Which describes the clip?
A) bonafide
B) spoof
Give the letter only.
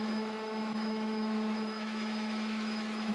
B